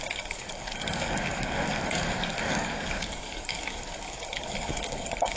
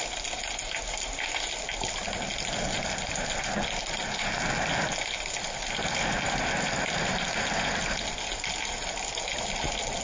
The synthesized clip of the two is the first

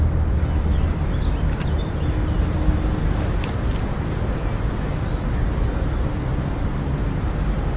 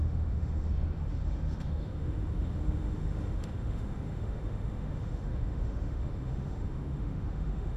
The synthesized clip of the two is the second